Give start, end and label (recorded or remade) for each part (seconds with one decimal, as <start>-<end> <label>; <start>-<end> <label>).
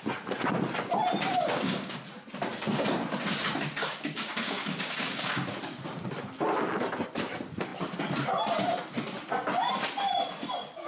0.0-1.3 recorded; 1.3-2.0 remade; 2.0-3.8 recorded; 3.8-5.5 remade; 5.5-10.9 recorded